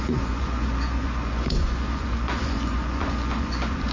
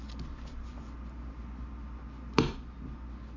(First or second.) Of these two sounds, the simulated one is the first